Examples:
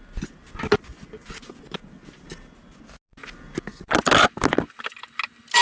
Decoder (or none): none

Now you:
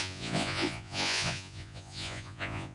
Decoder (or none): vocoder, Vocos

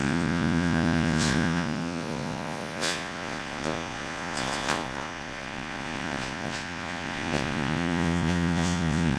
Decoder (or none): vocoder, Vocos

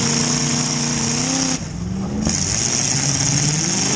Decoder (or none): none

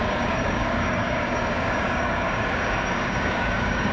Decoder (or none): codec, DAC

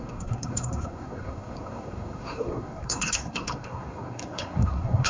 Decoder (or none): codec, SNAC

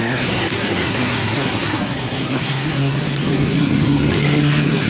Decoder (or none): codec, SNAC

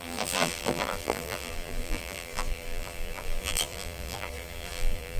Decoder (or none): vocoder, BigVGAN v2